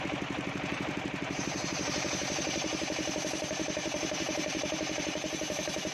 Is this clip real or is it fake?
fake